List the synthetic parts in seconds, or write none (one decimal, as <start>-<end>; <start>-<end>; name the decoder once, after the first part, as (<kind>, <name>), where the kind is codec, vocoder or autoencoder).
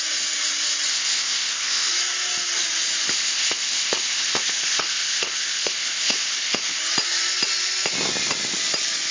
0.9-1.9 (codec, ZipCodec); 3.1-6.8